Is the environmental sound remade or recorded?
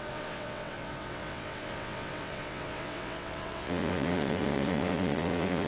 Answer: remade